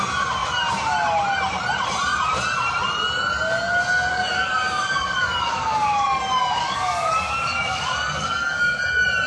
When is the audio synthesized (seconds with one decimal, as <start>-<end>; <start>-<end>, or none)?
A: 4.1-8.8